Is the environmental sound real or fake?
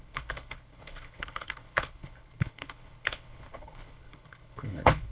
fake